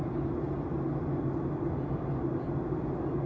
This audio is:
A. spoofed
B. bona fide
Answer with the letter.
B